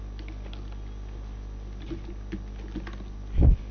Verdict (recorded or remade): recorded